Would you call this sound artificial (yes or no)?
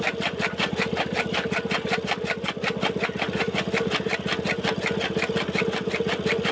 no